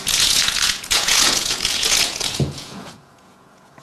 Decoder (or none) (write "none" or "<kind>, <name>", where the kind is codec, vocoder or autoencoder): vocoder, Vocos